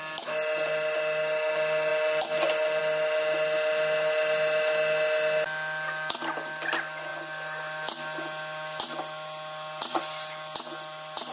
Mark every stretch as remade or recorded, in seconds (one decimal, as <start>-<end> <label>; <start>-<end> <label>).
0.0-11.3 recorded